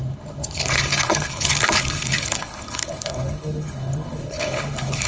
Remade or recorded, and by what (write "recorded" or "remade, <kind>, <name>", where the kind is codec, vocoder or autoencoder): remade, codec, HILCodec